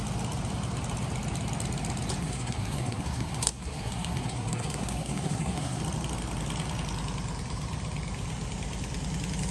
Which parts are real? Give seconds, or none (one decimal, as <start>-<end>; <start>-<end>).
0.0-2.2; 5.8-9.5